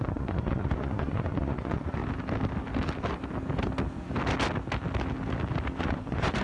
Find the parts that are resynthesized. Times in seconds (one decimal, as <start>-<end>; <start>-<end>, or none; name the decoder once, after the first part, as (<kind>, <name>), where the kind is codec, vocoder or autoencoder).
0.0-2.0 (vocoder, Vocos); 5.8-6.4

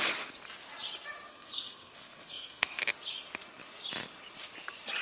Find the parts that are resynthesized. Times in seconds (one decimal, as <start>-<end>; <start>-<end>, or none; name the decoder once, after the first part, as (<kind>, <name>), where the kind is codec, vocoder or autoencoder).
1.3-2.8 (codec, SNAC)

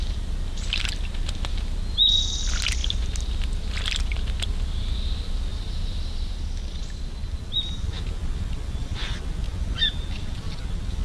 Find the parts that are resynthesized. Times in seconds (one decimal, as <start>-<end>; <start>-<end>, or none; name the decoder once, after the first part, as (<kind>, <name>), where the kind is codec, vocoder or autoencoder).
5.5-9.7 (vocoder, BigVGAN v2)

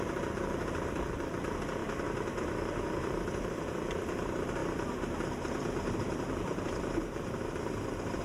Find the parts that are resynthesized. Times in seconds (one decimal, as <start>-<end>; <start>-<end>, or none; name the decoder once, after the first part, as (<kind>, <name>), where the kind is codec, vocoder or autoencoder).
0.0-1.8 (vocoder, BigVGAN v2); 2.8-4.6; 5.7-8.2